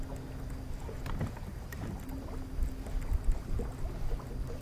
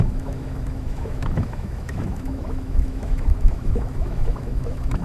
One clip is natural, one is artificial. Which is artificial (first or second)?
second